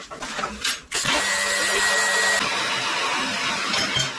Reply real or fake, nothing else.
real